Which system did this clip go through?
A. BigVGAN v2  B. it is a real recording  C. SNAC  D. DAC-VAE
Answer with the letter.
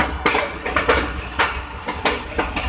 B